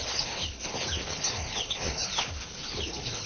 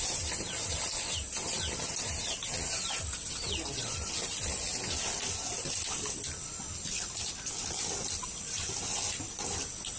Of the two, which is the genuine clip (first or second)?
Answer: second